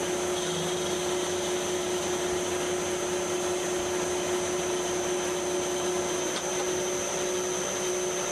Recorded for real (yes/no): yes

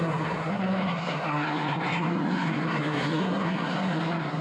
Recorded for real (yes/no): no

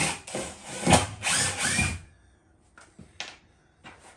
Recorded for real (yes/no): yes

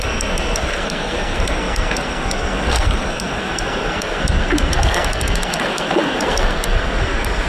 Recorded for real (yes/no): no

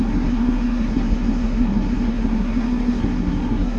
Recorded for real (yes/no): no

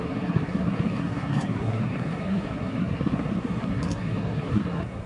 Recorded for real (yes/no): no